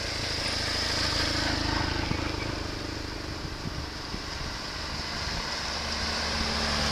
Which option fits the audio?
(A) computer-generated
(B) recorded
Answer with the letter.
B